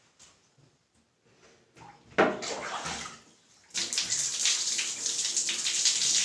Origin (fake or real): real